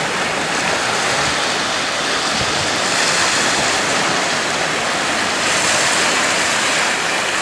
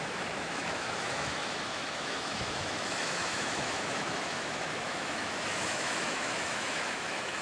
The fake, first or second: second